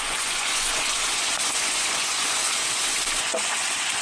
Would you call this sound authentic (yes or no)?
no